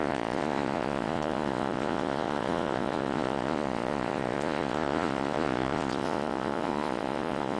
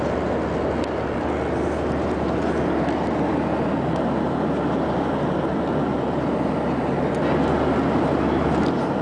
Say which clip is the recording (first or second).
second